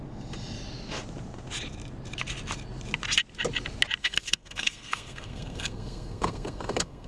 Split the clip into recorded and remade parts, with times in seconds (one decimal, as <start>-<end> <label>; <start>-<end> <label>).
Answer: 0.0-4.0 recorded; 4.0-7.1 remade